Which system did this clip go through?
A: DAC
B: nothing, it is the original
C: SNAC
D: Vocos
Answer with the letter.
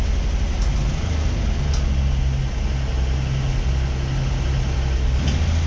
B